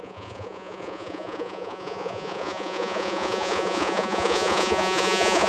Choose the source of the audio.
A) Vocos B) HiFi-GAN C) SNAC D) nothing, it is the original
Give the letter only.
A